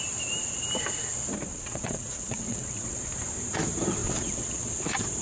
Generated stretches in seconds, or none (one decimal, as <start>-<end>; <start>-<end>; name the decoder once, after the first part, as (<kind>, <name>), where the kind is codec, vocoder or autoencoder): 1.5-3.1 (vocoder, WaveNeXt); 4.0-4.7